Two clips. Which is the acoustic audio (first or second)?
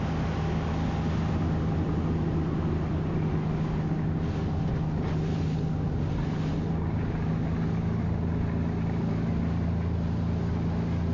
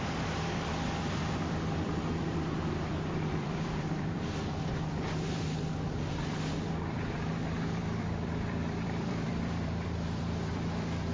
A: first